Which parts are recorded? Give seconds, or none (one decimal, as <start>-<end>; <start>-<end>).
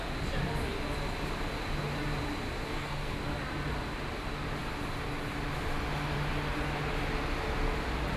0.0-2.7; 3.2-8.2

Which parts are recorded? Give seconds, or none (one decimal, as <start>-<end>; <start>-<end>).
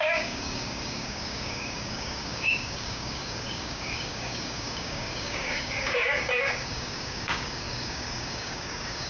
none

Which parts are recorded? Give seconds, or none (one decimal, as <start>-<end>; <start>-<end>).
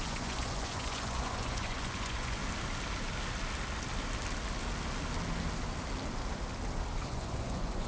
2.4-7.1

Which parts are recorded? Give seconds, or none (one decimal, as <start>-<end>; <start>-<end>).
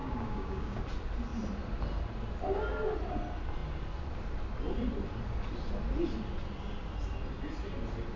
0.8-8.2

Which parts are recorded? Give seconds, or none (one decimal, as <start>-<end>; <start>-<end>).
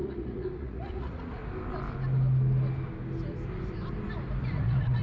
1.4-4.4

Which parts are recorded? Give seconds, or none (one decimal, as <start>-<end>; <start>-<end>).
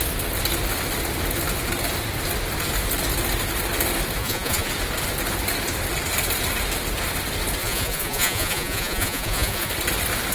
0.0-4.2; 4.7-7.6; 9.7-10.3